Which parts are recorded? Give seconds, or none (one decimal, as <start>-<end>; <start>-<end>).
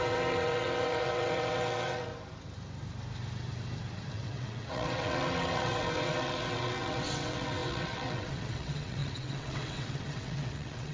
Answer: 2.1-4.1